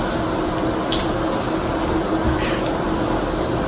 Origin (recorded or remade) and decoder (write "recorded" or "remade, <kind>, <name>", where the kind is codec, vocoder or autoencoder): recorded